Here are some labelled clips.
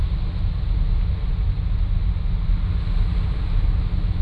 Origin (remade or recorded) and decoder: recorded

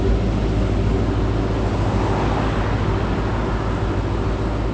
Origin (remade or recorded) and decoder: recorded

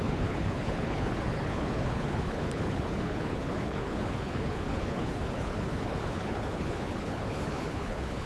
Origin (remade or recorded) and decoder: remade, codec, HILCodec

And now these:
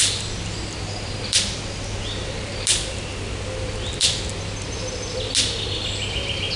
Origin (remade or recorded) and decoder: recorded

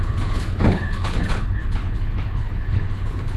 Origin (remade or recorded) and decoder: remade, codec, HILCodec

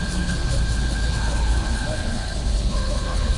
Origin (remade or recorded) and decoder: remade, codec, HILCodec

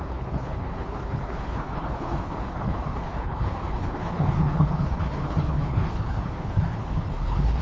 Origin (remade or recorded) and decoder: remade, codec, HILCodec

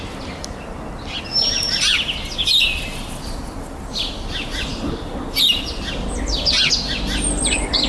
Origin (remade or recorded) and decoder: recorded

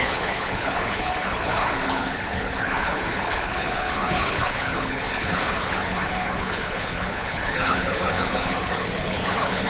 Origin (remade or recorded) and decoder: remade, codec, HILCodec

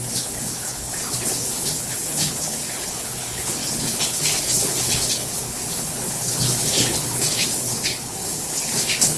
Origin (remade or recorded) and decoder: remade, codec, HILCodec